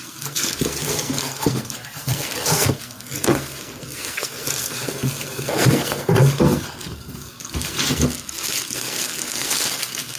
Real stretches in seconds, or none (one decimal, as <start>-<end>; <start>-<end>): none